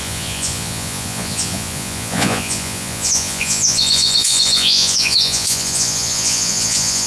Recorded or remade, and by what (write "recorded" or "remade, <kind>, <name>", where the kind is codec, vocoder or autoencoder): remade, vocoder, Vocos